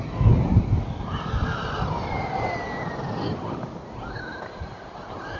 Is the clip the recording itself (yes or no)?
yes